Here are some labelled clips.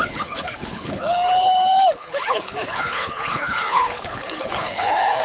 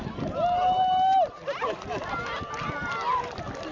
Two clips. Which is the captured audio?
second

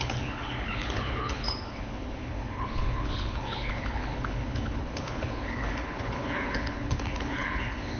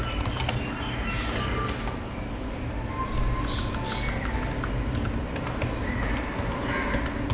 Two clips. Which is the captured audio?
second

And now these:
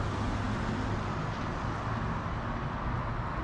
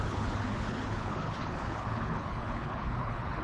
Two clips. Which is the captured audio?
first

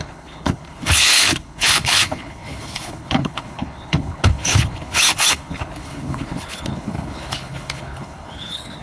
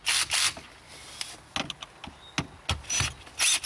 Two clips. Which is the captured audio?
second